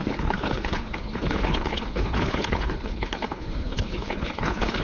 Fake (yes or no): yes